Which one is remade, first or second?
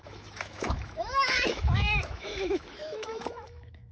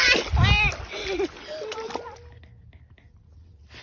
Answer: first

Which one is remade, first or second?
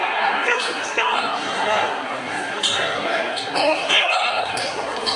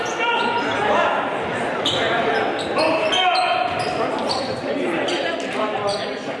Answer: first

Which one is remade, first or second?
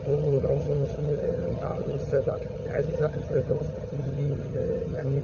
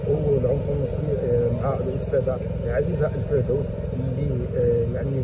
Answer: first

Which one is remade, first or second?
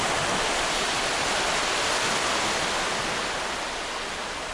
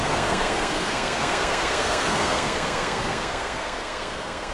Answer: second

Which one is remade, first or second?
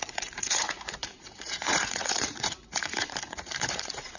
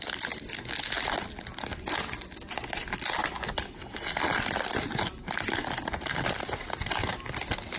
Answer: first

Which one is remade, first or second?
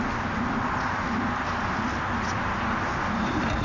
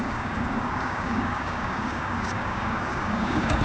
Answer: second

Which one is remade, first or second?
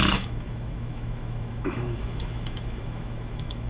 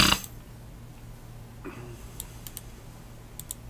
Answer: first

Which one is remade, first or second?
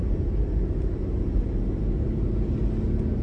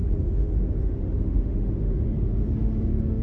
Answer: second